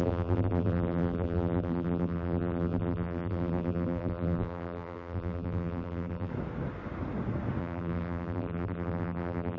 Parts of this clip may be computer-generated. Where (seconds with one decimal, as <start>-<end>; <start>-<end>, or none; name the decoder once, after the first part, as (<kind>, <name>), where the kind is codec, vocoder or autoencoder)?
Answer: 0.0-6.3 (vocoder, BigVGAN v2); 7.6-9.6